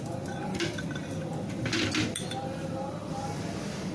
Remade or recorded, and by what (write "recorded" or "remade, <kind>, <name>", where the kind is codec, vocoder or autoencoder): recorded